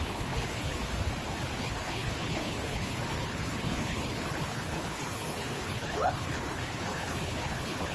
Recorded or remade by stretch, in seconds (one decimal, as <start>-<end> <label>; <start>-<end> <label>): 0.0-0.8 remade; 0.8-1.6 recorded; 1.6-7.9 remade